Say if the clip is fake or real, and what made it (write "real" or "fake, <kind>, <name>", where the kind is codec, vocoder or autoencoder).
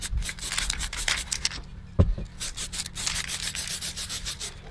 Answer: real